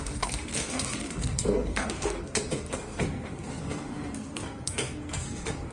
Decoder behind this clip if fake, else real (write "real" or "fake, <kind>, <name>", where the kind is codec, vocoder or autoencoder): fake, codec, SNAC